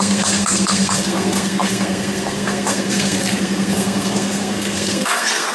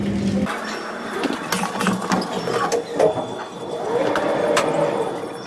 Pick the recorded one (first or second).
second